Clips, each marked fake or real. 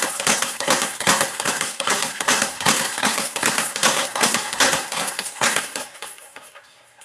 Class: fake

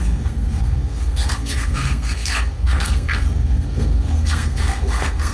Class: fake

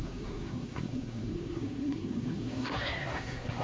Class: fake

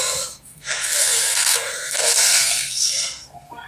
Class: fake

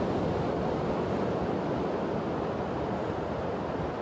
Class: real